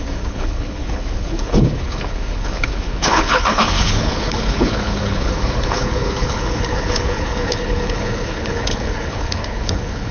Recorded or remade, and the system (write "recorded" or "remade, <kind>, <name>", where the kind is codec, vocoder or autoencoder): remade, codec, HILCodec